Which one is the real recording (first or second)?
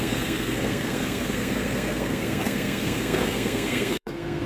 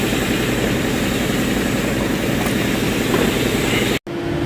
second